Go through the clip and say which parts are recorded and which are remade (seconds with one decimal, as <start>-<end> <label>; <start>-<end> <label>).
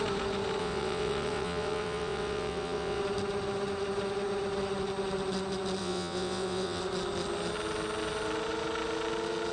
0.0-0.6 recorded; 0.6-3.0 remade; 3.0-5.8 recorded; 5.8-6.8 remade; 6.8-9.5 recorded